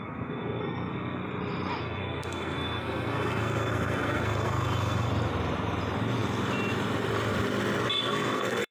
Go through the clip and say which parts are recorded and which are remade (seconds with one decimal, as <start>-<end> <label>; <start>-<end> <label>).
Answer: 0.0-1.2 remade; 1.2-1.8 recorded; 1.8-5.1 remade; 5.1-8.0 recorded; 8.0-8.7 remade